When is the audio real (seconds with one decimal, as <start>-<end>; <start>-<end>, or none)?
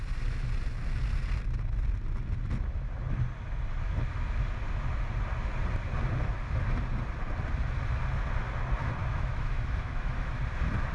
0.0-9.0; 10.4-10.9